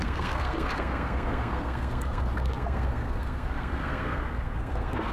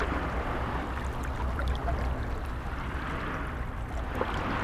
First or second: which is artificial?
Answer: first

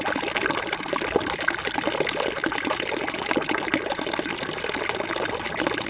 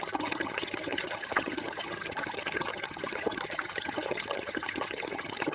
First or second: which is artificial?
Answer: second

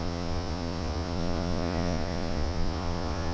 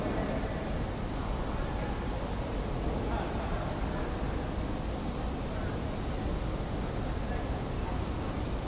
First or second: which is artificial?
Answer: first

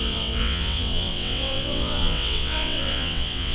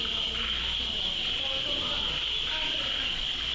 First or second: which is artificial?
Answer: first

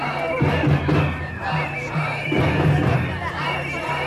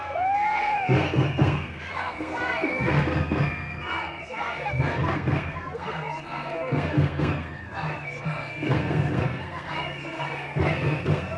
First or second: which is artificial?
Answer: second